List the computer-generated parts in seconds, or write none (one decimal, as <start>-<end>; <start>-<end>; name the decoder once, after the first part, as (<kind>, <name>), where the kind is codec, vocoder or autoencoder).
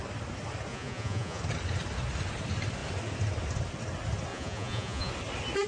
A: 0.7-1.4 (vocoder, Vocos); 4.3-5.1